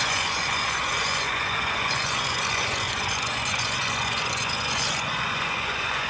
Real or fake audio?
fake